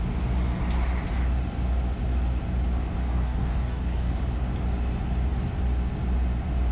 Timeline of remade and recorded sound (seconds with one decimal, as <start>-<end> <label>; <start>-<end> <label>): 0.0-3.0 recorded; 3.0-4.1 remade; 4.1-6.7 recorded